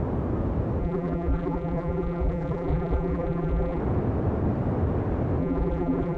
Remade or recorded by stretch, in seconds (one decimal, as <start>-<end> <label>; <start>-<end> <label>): 0.0-0.8 recorded; 0.8-3.8 remade; 3.8-5.4 recorded; 5.4-6.2 remade